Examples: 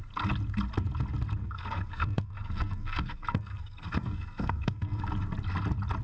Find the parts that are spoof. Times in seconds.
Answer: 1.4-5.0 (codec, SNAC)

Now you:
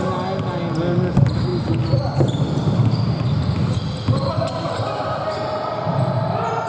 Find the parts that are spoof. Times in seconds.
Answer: none